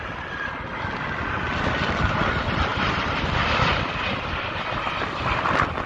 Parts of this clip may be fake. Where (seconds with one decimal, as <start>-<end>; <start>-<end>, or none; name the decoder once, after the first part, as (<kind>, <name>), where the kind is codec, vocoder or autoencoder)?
2.7-4.4 (vocoder, BigVGAN v2)